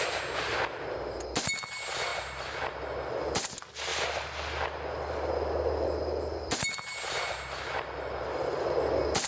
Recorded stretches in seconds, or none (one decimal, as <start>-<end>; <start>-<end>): 0.0-9.3